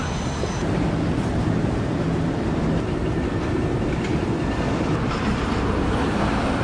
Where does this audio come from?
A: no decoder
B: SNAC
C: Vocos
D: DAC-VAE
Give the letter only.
A